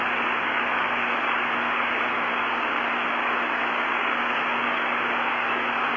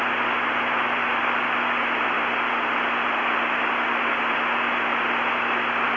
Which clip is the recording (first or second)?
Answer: second